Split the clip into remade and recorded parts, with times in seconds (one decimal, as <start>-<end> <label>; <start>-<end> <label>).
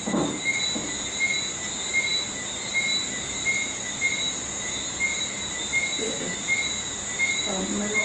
0.0-8.0 recorded